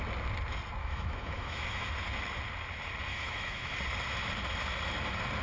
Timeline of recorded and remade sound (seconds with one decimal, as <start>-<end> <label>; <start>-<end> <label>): 0.0-0.8 recorded; 0.8-1.9 remade; 1.9-3.1 recorded; 3.1-3.8 remade; 3.8-5.4 recorded